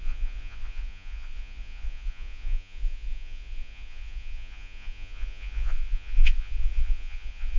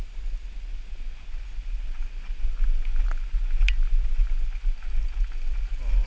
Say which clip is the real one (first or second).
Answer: second